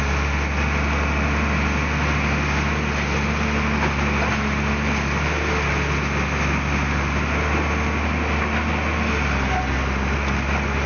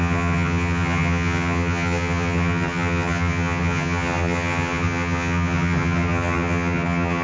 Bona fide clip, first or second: first